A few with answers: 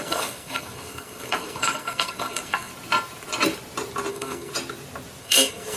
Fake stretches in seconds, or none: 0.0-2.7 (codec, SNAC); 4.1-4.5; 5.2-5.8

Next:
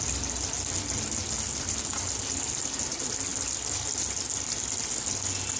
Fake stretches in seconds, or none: none